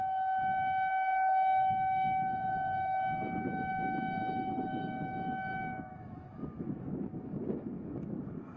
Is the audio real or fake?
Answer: fake